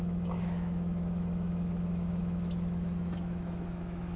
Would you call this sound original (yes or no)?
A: no